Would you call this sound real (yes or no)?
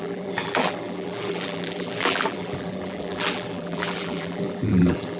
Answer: no